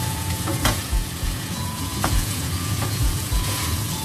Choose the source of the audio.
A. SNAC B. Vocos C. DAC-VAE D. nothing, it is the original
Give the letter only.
B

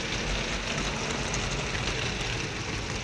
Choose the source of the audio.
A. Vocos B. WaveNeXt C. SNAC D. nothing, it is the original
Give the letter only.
D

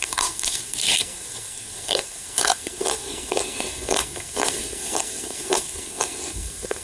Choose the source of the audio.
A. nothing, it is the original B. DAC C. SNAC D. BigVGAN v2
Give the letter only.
C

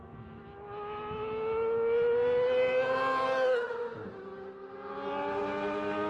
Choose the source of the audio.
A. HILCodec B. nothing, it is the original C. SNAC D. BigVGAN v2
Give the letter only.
B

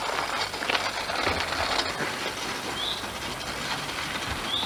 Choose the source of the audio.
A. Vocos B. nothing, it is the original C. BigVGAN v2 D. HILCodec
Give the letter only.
B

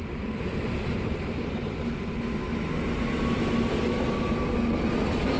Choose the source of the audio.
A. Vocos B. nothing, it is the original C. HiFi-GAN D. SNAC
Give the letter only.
B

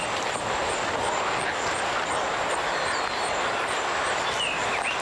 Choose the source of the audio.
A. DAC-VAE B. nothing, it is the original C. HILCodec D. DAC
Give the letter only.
B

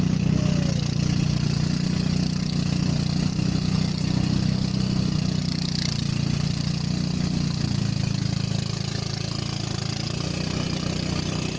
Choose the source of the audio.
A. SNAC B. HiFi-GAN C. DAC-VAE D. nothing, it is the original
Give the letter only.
D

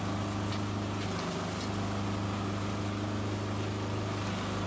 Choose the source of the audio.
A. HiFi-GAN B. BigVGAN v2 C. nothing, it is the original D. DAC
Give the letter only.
C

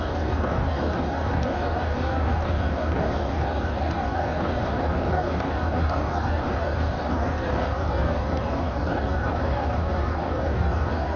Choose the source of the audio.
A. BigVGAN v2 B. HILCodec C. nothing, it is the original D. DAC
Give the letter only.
D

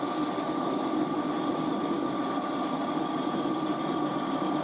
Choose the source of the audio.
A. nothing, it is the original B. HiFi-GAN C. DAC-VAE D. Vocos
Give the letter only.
A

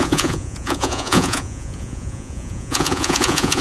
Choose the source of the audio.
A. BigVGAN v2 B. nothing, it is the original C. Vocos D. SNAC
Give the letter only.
C